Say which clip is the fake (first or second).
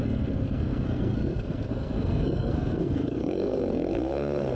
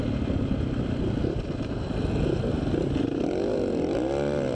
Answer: first